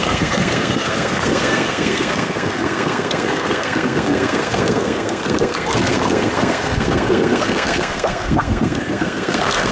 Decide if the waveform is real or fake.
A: fake